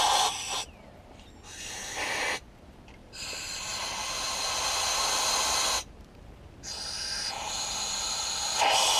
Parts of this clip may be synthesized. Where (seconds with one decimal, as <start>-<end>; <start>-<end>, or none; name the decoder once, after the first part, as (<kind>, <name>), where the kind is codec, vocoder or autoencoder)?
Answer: none